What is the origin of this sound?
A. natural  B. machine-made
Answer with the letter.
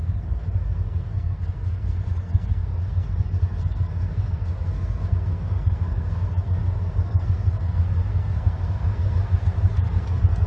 B